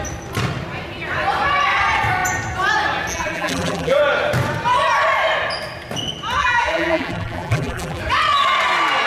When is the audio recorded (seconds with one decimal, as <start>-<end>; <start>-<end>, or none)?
0.0-3.1; 4.0-6.4; 8.0-9.1